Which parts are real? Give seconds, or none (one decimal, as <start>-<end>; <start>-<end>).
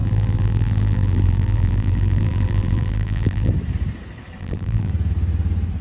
3.5-4.4; 4.9-5.8